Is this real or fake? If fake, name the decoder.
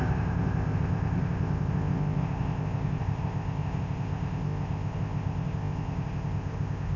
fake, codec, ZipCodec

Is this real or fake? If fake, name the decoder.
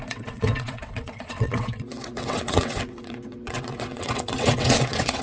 fake, vocoder, WaveNeXt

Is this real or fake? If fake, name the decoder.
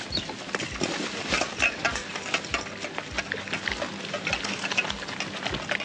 real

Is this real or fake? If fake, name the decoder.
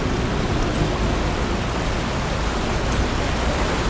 real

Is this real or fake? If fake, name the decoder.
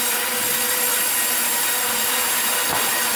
fake, vocoder, BigVGAN v2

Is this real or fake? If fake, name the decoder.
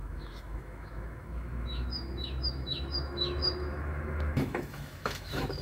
fake, autoencoder, DAC-VAE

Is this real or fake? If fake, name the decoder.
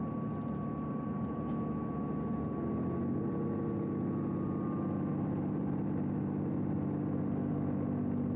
real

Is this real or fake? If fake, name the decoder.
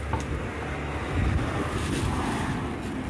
real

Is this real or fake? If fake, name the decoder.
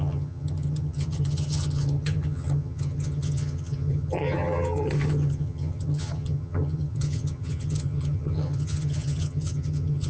fake, vocoder, HiFi-GAN